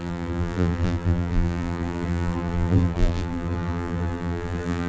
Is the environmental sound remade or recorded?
remade